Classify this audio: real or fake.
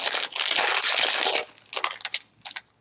real